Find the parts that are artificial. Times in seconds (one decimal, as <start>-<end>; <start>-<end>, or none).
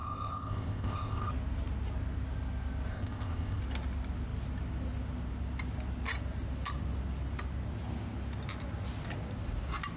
0.0-1.3; 2.9-3.6